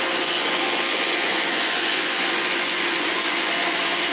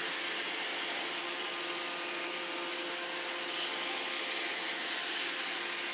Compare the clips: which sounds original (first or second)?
second